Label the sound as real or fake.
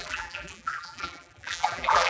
fake